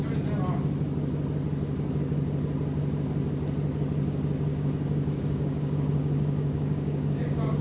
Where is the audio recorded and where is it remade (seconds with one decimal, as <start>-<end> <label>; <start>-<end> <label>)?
0.0-4.5 recorded; 4.5-7.6 remade